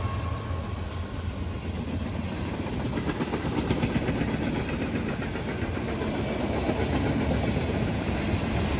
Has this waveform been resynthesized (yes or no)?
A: no